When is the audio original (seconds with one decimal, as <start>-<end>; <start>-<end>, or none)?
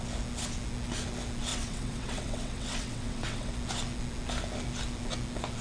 0.0-1.5; 3.5-5.6